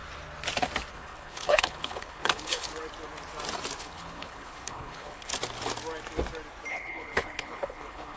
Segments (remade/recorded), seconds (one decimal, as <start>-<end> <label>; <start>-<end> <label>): 0.0-0.9 recorded; 0.9-2.7 remade; 2.7-3.8 recorded; 3.8-5.3 remade; 5.3-6.7 recorded; 6.7-8.2 remade